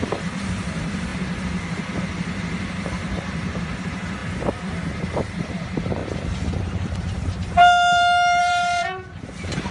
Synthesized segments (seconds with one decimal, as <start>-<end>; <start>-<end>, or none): 0.0-9.7